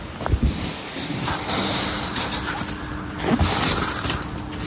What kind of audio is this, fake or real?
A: real